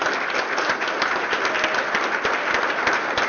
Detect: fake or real fake